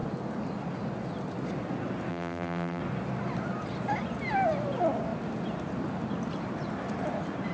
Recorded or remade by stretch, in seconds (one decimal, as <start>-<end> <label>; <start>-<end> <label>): 0.0-2.1 recorded; 2.1-2.8 remade; 2.8-7.5 recorded